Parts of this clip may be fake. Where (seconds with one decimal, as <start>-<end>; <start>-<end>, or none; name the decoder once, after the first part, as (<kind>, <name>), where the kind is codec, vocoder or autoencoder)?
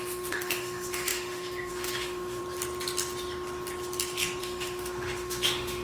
0.0-2.4 (autoencoder, DAC-VAE); 4.4-5.8